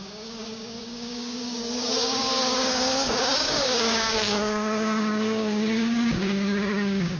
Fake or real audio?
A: fake